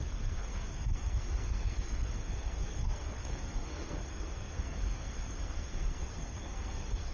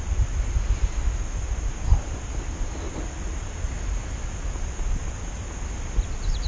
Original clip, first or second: second